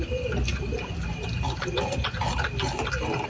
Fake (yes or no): no